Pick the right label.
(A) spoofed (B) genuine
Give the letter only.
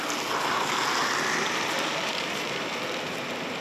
A